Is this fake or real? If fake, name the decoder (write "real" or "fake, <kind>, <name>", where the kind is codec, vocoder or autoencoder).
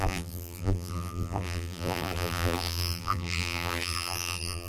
fake, vocoder, BigVGAN v2